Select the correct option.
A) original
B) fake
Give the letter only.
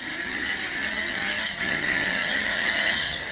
B